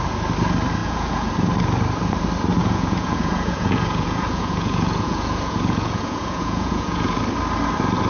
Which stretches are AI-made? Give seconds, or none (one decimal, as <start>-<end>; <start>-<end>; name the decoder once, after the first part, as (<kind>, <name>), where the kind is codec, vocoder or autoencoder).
0.8-1.3 (vocoder, Vocos); 2.6-7.2